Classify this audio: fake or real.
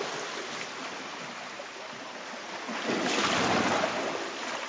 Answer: real